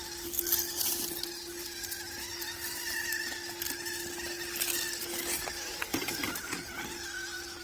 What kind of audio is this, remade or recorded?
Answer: recorded